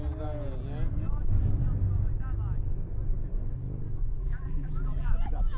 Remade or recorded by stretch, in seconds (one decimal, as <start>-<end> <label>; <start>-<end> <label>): 0.0-4.2 recorded; 4.2-5.1 remade; 5.1-5.6 recorded